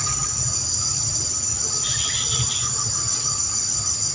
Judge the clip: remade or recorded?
recorded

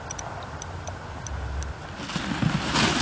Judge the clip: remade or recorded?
recorded